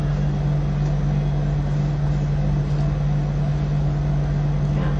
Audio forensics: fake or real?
real